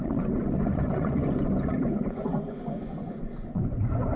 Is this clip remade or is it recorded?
remade